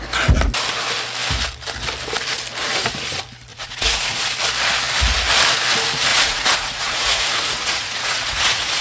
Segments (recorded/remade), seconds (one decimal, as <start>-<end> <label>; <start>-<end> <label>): 0.0-3.5 recorded; 3.5-4.3 remade; 4.3-6.1 recorded; 6.1-8.8 remade